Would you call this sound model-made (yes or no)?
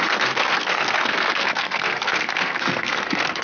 yes